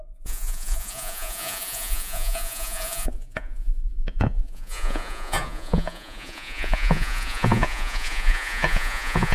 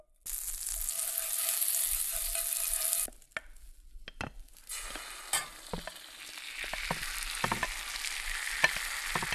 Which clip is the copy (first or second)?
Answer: first